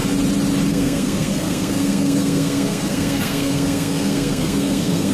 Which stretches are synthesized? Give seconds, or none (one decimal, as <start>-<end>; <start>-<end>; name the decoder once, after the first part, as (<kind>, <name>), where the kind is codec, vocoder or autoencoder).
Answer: 0.7-5.1 (codec, SNAC)